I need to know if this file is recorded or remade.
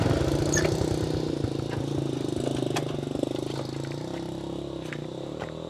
recorded